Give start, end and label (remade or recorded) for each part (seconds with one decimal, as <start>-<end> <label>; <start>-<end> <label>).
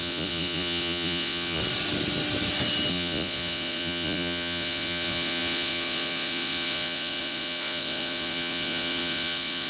0.0-1.6 remade; 1.6-2.9 recorded; 2.9-9.7 remade